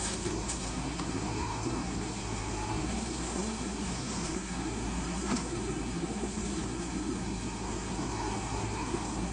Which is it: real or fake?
fake